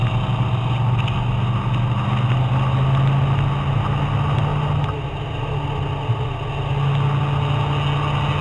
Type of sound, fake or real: real